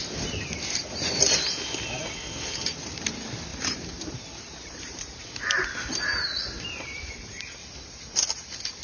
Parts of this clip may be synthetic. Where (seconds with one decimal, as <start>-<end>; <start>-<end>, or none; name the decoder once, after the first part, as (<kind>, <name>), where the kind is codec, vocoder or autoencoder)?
3.5-7.7 (vocoder, BigVGAN v2)

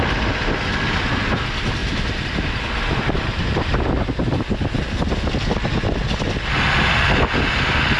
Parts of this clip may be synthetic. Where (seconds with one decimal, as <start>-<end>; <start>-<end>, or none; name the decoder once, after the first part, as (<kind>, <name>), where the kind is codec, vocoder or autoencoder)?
1.8-4.1 (vocoder, BigVGAN v2)

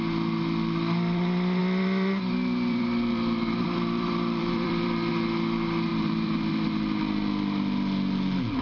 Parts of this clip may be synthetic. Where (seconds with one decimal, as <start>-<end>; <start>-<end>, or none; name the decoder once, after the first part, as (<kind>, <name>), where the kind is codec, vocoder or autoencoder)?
1.6-5.1 (vocoder, BigVGAN v2); 5.9-6.5